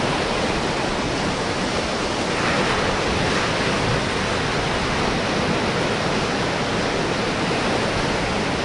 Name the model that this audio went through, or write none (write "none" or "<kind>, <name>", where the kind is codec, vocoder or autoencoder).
none